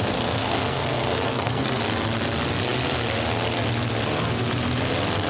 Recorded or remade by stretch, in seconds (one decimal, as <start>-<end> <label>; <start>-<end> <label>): 0.0-0.4 recorded; 0.4-1.8 remade; 1.8-5.3 recorded